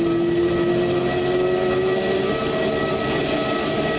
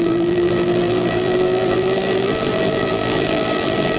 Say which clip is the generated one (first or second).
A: second